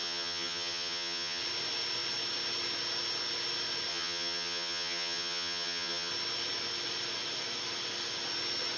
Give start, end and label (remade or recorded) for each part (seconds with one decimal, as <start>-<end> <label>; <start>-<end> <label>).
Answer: 0.0-1.4 remade; 1.4-3.9 recorded; 3.9-6.1 remade; 6.1-8.8 recorded